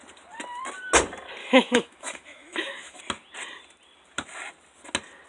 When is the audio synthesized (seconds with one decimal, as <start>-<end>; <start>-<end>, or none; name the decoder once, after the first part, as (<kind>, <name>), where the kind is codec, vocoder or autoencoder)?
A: 1.4-3.0 (autoencoder, DAC-VAE)